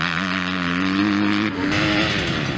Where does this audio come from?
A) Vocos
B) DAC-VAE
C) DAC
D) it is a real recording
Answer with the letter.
D